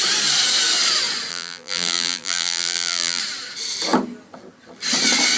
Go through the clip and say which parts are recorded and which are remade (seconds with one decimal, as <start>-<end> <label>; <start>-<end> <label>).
0.0-1.3 recorded; 1.3-3.2 remade; 3.2-5.4 recorded

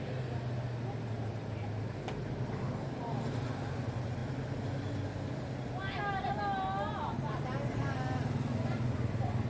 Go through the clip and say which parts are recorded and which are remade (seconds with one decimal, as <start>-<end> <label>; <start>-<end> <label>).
0.0-9.5 recorded